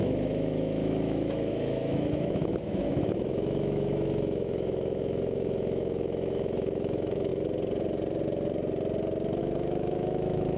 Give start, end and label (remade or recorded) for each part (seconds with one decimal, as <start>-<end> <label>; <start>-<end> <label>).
0.0-7.3 remade; 7.3-9.4 recorded; 9.4-10.6 remade